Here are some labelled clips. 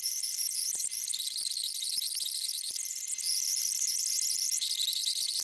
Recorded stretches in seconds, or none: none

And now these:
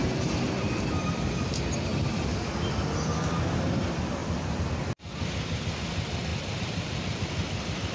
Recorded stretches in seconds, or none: 0.0-4.2; 4.7-6.3